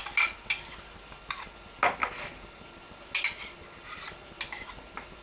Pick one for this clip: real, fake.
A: real